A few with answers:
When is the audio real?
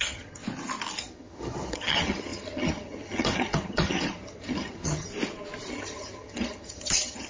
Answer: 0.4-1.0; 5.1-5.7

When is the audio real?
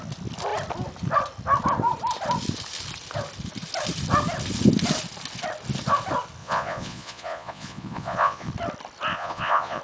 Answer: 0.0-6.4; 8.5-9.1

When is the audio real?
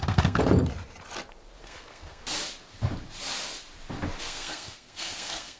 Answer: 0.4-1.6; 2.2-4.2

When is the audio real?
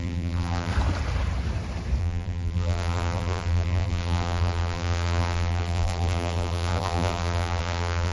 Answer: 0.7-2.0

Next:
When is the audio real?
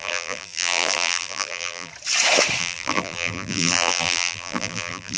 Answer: 1.9-2.6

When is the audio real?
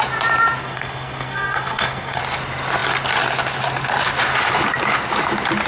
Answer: 0.0-0.6; 2.2-5.7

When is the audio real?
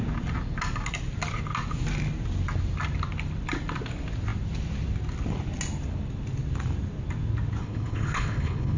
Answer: 0.0-7.6